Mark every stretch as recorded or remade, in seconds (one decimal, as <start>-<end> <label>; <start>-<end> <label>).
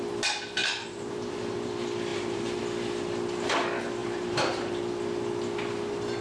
0.0-0.6 recorded; 0.6-1.7 remade; 1.7-2.1 recorded; 2.1-2.6 remade; 2.6-4.0 recorded; 4.0-4.7 remade; 4.7-6.2 recorded